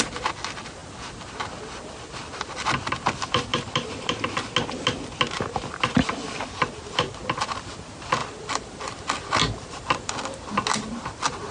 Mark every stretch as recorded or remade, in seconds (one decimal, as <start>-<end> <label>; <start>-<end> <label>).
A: 0.0-3.5 recorded; 3.5-4.1 remade; 4.1-8.2 recorded; 8.2-10.5 remade; 10.5-11.5 recorded